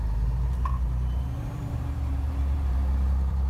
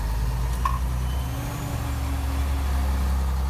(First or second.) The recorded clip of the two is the second